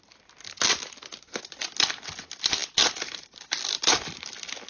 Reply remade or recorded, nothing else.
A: recorded